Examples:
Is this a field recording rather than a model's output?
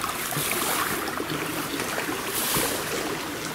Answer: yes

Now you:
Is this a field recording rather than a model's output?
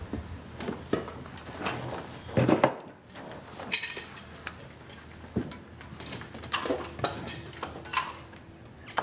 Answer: yes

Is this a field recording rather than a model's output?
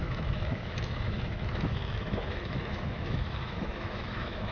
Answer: no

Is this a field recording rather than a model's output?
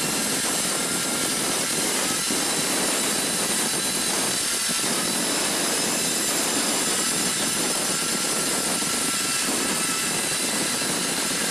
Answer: yes